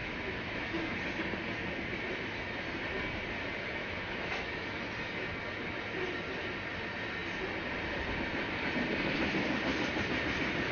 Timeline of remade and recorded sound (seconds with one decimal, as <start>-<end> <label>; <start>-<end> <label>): 0.0-1.2 remade; 1.2-3.8 recorded; 3.8-4.8 remade; 4.8-10.7 recorded